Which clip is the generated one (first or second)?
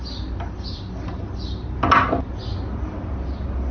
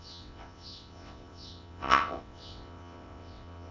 second